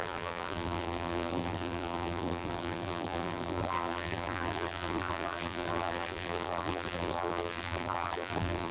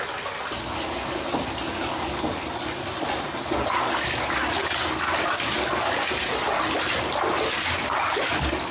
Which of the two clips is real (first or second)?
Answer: second